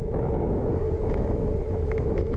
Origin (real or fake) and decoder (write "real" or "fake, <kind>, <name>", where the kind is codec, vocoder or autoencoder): fake, autoencoder, DAC-VAE